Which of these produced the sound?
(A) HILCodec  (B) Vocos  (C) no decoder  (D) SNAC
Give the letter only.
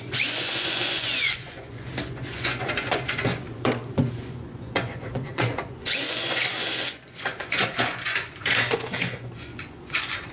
B